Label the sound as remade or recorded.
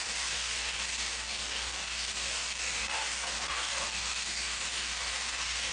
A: remade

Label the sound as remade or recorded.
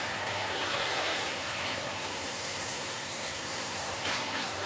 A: remade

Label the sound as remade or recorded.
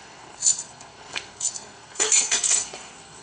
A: remade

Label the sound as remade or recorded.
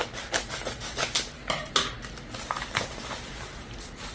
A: recorded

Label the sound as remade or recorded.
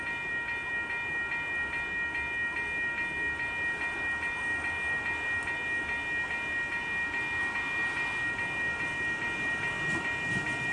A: recorded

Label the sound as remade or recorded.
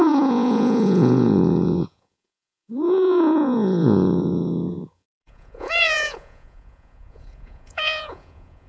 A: remade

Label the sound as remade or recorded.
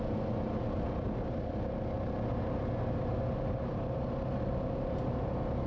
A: recorded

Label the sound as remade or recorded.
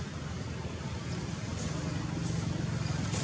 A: recorded